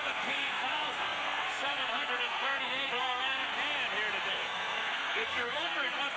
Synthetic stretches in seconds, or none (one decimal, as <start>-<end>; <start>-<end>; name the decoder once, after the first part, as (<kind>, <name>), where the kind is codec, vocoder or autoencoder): 0.0-3.5 (codec, SNAC); 4.3-6.2